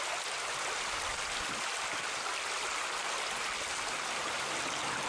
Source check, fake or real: real